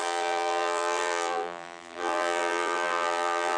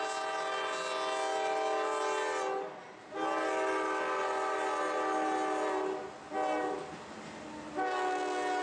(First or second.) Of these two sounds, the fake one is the first